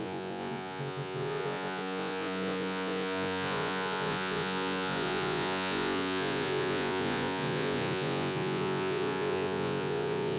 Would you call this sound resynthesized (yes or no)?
yes